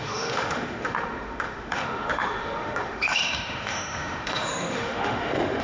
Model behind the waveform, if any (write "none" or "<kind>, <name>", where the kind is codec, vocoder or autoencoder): autoencoder, DAC-VAE